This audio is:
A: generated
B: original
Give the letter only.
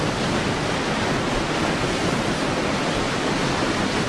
B